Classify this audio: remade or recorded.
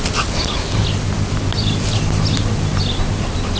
recorded